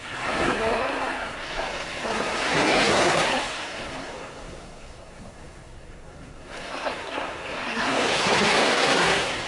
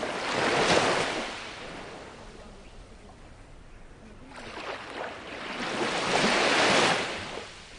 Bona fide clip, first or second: second